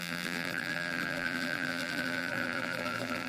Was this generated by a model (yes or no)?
yes